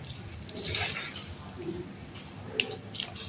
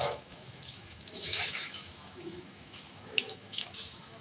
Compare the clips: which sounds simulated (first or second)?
second